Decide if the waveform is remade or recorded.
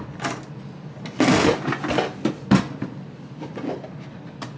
recorded